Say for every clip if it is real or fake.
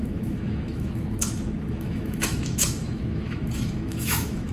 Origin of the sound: fake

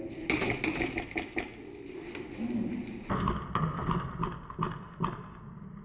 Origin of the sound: real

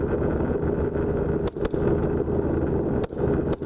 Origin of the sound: real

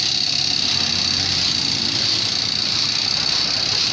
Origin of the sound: real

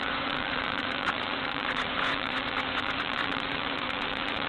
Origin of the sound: fake